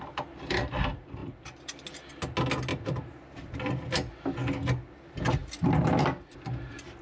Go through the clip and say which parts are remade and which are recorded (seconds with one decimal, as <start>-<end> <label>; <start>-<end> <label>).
0.0-7.0 recorded